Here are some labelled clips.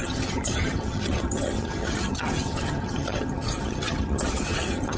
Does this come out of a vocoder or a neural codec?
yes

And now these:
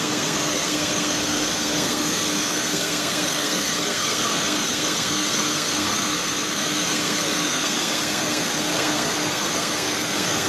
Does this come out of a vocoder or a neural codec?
yes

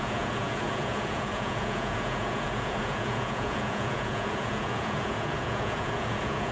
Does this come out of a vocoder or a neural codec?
yes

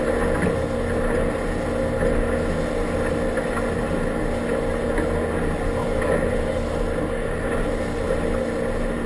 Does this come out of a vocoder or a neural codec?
no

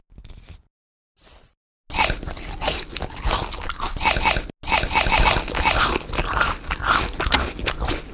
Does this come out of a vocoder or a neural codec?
no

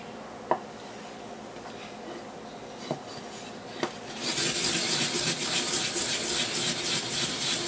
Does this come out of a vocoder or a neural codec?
no